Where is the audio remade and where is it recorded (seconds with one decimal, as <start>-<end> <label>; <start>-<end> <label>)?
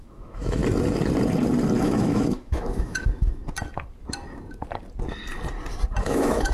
0.0-0.6 remade; 0.6-1.8 recorded; 1.8-3.4 remade; 3.4-6.0 recorded; 6.0-6.5 remade